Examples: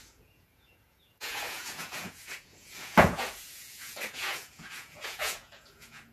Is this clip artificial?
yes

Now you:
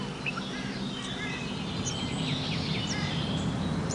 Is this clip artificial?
no